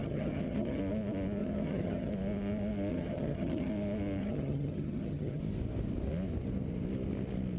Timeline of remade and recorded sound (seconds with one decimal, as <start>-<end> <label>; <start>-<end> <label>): 0.0-0.8 remade; 0.8-1.4 recorded; 1.4-2.1 remade; 2.1-2.9 recorded; 2.9-3.7 remade; 3.7-4.2 recorded; 4.2-5.4 remade; 5.4-7.6 recorded